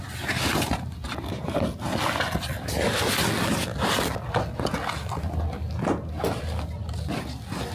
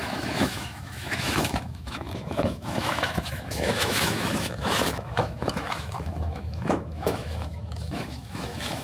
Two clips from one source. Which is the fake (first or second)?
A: second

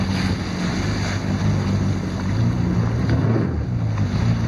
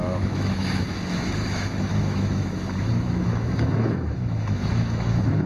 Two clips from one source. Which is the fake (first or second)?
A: second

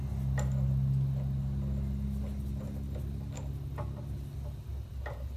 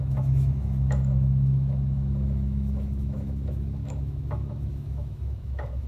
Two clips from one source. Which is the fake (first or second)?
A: second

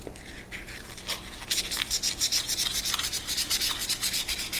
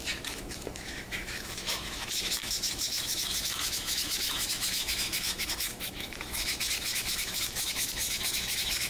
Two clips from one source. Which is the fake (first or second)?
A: second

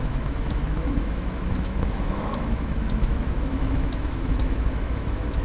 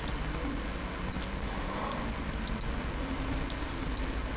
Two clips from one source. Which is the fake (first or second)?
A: first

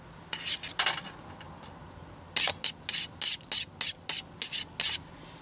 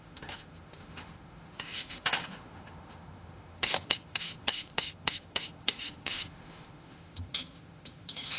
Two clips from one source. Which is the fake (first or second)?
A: second